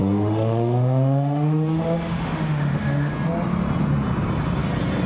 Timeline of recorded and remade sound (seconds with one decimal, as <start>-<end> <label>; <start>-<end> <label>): 0.0-3.1 remade; 3.1-5.1 recorded